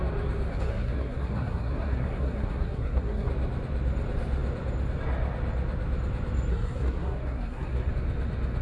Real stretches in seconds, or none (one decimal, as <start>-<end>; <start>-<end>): 0.0-0.5; 3.3-6.5; 7.9-8.6